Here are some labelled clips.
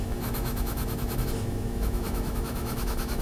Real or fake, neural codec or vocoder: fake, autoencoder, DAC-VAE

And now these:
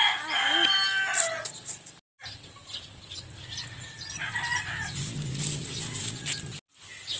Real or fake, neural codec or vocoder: real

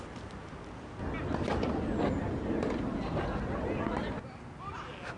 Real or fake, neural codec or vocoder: real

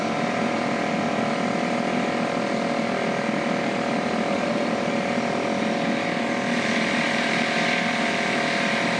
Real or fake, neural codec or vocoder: real